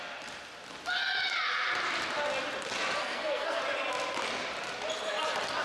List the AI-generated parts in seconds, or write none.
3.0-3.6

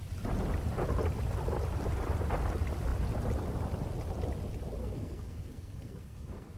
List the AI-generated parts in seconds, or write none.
4.8-6.6

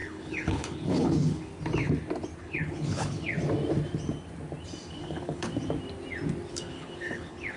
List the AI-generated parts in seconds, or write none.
0.0-1.5; 2.4-3.3; 4.9-5.5; 6.5-7.6

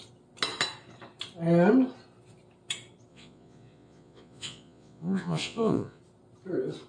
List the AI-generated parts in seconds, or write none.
3.1-6.0

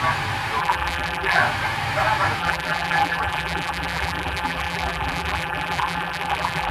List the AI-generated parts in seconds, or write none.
0.6-1.4; 2.4-6.7

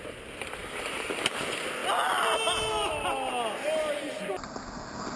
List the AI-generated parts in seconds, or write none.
none

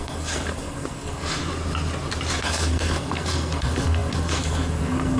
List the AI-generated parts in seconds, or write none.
0.0-1.4; 2.4-5.2